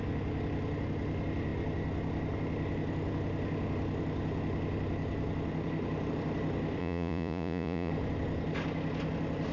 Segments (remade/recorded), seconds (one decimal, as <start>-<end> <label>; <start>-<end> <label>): 0.0-6.8 recorded; 6.8-7.9 remade; 7.9-9.5 recorded